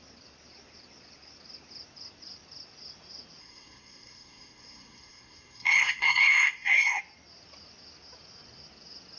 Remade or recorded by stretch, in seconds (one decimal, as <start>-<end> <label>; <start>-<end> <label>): 0.0-3.4 recorded; 3.4-7.0 remade; 7.0-9.2 recorded